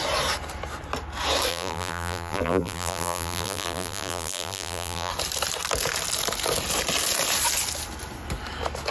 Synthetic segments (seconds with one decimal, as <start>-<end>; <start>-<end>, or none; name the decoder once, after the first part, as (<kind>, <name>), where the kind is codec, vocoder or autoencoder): 1.5-5.1 (vocoder, BigVGAN v2)